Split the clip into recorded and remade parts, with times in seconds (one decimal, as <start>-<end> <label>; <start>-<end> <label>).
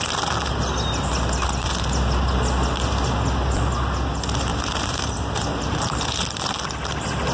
0.0-4.5 recorded; 4.5-6.1 remade; 6.1-7.3 recorded